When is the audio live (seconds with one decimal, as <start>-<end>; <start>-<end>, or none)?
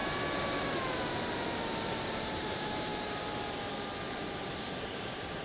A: 0.0-1.3; 2.9-4.3